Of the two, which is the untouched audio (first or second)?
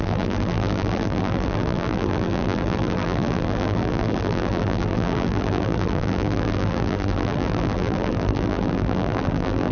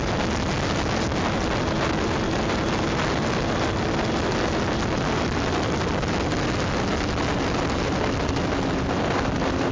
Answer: second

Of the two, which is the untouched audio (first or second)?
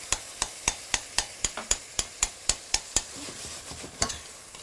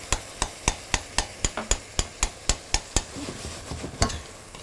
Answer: second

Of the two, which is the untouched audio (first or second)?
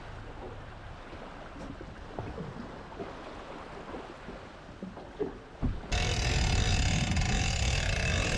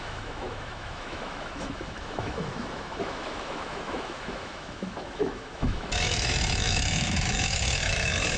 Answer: first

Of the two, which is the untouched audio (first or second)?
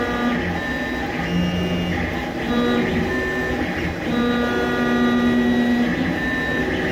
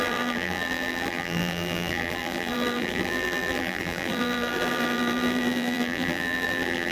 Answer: first